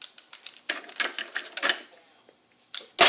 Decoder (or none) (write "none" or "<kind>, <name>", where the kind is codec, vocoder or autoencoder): none